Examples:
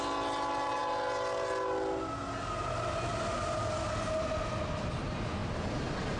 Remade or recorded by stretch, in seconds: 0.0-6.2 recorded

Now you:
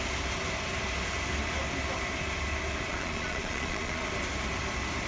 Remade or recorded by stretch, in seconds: 0.0-2.9 recorded; 2.9-4.0 remade; 4.0-5.1 recorded

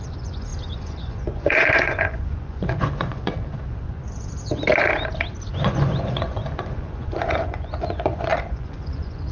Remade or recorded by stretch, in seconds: 0.0-4.0 remade; 4.0-5.5 recorded; 5.5-9.3 remade